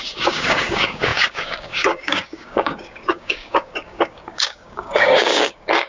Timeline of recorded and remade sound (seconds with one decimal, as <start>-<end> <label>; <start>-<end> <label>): 0.0-5.9 remade